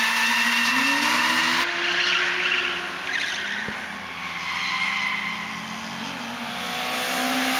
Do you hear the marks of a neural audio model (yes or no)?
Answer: no